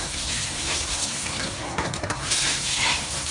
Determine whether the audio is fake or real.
fake